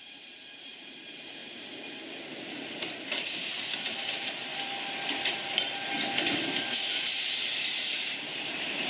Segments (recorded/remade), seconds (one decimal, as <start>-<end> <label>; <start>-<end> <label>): 0.0-1.4 remade; 1.4-4.0 recorded; 4.0-4.5 remade; 4.5-6.6 recorded; 6.6-8.9 remade